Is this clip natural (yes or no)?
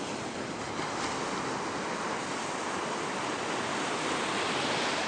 yes